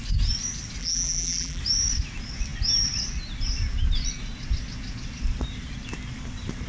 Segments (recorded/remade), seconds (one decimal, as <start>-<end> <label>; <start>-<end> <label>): 0.0-0.8 recorded; 0.8-1.6 remade; 1.6-6.7 recorded